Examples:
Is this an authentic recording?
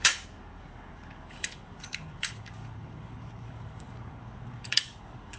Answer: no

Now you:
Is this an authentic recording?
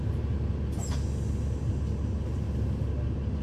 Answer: yes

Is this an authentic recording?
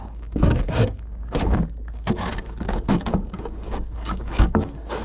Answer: no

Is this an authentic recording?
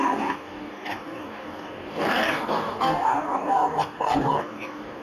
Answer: no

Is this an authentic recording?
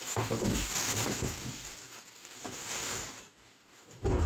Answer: no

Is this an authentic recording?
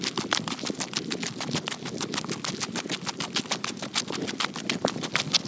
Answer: yes